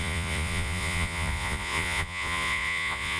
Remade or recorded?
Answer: remade